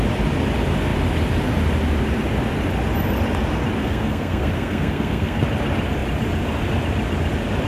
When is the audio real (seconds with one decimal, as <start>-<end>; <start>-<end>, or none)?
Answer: 0.0-3.8; 5.4-7.7